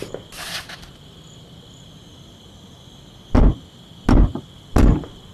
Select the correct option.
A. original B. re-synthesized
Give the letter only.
A